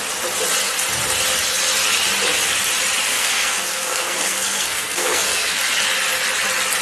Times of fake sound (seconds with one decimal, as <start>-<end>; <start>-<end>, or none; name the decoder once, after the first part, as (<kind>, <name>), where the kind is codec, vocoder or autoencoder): 3.1-5.6 (codec, SNAC)